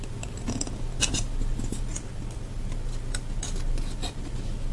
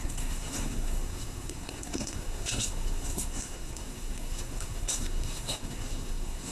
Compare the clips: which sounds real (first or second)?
first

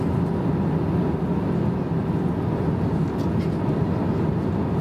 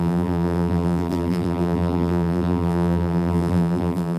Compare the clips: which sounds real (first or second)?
first